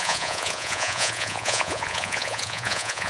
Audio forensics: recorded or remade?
remade